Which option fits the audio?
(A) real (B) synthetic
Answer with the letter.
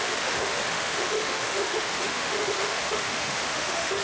B